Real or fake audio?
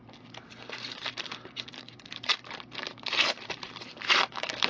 fake